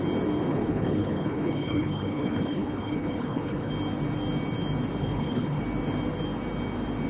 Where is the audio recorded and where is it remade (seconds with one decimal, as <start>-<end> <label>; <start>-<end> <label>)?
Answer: 0.0-0.5 recorded; 0.5-3.7 remade; 3.7-5.0 recorded; 5.0-5.6 remade; 5.6-7.1 recorded